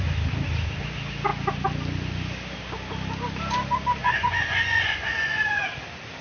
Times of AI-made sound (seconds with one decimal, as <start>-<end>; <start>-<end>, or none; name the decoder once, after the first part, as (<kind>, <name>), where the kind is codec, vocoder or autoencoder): 4.0-5.6 (vocoder, Vocos)

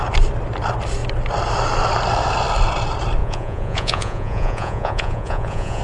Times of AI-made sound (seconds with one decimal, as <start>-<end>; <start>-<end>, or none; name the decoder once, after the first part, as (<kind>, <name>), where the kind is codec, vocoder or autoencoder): 3.2-5.8 (vocoder, Vocos)

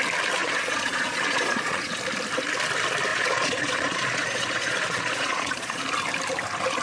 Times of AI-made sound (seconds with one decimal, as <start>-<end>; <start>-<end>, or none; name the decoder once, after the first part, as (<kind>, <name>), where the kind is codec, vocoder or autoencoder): 0.4-1.9 (vocoder, Vocos); 3.1-5.8

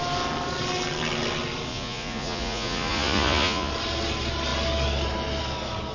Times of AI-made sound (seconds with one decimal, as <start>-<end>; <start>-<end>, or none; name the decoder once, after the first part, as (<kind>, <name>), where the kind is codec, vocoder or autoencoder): 1.7-3.7 (vocoder, Vocos)